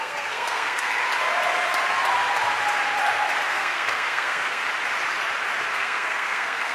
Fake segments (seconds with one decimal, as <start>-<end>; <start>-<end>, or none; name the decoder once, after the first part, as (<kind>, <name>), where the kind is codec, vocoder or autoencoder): 0.0-1.0 (codec, SNAC); 3.5-4.6; 5.7-6.7